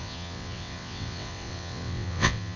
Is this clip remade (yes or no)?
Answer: yes